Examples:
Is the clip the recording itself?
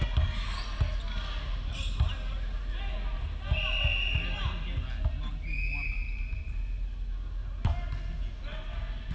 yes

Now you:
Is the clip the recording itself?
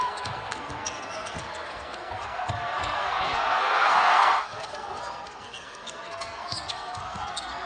no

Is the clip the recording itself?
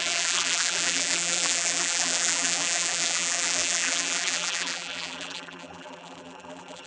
no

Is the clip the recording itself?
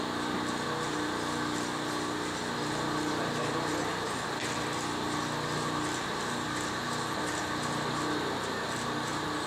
yes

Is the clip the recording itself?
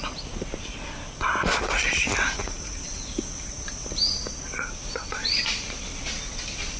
yes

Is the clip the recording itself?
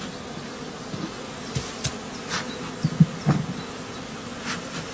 yes